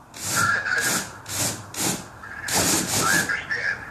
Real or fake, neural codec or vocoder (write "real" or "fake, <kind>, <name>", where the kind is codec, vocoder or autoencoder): real